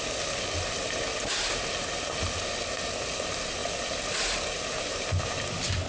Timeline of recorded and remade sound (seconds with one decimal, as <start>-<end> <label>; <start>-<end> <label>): 0.0-5.9 recorded